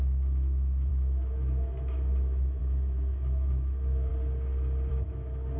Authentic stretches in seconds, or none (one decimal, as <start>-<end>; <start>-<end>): 4.1-4.9